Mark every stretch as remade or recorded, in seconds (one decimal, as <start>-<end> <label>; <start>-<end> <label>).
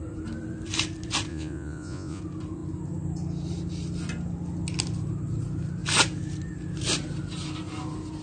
0.0-1.3 recorded; 1.3-2.2 remade; 2.2-8.2 recorded